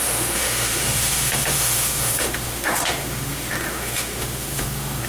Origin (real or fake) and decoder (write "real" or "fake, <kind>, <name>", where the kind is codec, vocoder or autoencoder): fake, autoencoder, DAC-VAE